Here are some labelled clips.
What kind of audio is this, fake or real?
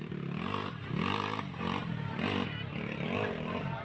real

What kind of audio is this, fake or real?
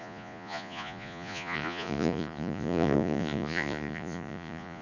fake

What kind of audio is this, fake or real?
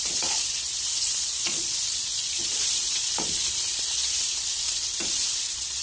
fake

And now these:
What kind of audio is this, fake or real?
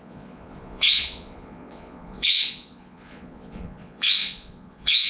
fake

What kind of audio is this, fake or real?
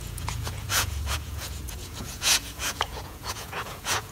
fake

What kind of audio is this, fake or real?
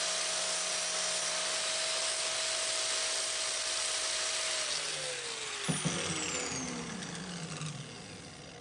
real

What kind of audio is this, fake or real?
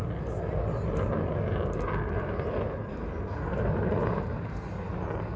real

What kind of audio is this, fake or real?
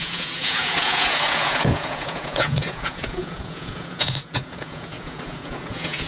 fake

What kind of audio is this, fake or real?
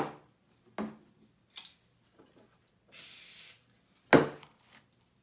real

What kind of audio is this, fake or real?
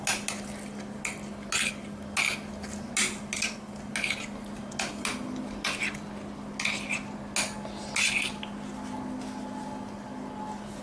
real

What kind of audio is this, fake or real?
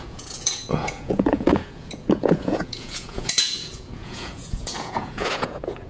fake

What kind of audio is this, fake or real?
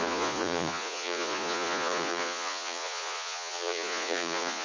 fake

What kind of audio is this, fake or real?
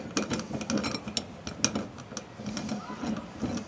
real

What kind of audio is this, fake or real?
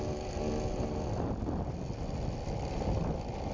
real